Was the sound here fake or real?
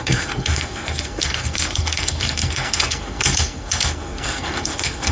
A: fake